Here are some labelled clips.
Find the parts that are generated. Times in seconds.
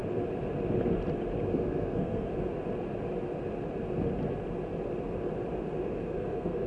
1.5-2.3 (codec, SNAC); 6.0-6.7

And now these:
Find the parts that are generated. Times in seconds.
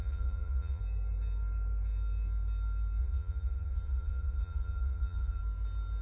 0.0-0.8 (vocoder, Vocos); 3.0-5.4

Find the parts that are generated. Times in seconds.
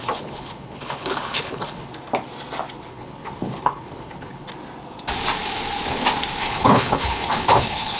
0.0-1.9 (codec, HILCodec); 2.9-4.5; 6.4-8.0